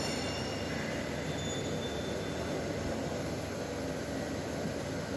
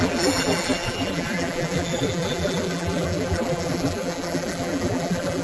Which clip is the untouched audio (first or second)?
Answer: first